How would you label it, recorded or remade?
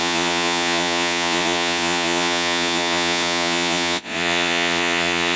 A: remade